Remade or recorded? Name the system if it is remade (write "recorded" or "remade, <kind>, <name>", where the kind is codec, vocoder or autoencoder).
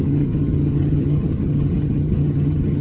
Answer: remade, vocoder, HiFi-GAN